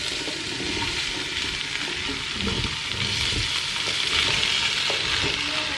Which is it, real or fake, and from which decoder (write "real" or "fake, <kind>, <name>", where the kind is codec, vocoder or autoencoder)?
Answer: real